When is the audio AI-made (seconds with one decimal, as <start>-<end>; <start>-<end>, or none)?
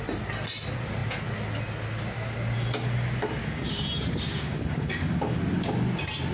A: 3.4-5.4